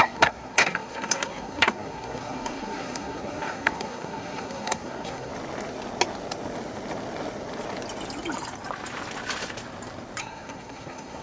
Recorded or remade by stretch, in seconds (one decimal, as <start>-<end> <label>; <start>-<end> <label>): 0.0-5.3 remade; 5.3-10.2 recorded; 10.2-11.2 remade

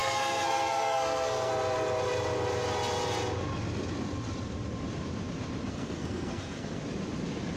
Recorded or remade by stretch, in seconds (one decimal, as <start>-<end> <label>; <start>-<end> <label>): 0.0-1.5 remade; 1.5-5.7 recorded; 5.7-6.8 remade; 6.8-7.6 recorded

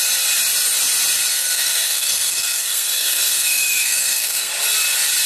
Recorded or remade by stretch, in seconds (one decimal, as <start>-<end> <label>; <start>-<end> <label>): 0.0-1.3 recorded; 1.3-4.5 remade; 4.5-5.3 recorded

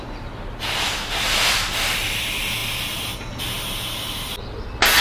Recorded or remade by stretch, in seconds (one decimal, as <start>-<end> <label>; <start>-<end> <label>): 0.0-5.0 recorded

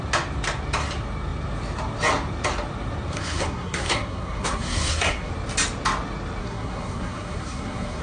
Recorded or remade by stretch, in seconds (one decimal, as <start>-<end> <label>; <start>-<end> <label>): 0.0-3.1 recorded; 3.1-5.3 remade; 5.3-6.4 recorded; 6.4-8.0 remade

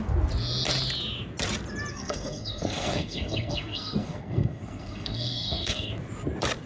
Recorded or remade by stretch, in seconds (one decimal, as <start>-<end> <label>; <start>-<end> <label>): 0.0-1.9 recorded; 1.9-5.9 remade; 5.9-6.7 recorded